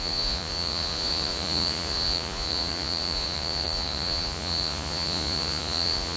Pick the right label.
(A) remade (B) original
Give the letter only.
A